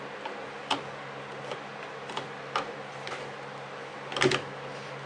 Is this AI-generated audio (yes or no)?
no